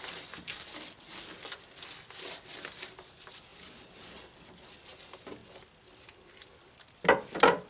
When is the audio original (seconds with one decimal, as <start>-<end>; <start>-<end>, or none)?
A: 0.0-7.7